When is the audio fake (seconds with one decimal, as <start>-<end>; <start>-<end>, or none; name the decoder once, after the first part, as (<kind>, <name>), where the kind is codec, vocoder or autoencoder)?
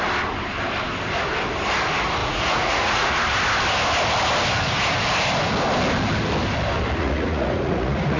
2.2-3.1 (vocoder, Vocos); 7.0-8.2